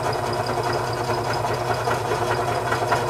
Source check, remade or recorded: recorded